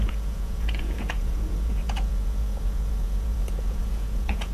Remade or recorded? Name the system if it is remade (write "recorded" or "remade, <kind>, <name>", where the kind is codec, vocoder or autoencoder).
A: remade, vocoder, Vocos